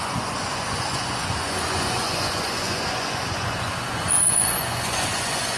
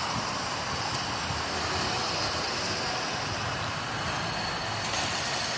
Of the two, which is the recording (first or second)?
second